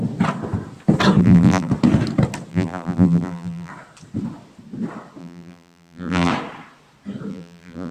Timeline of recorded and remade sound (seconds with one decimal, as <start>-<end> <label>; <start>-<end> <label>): 0.0-1.2 recorded; 1.2-1.7 remade; 1.7-2.5 recorded; 2.5-3.7 remade; 3.7-5.2 recorded; 5.2-6.3 remade; 6.3-7.3 recorded; 7.3-7.9 remade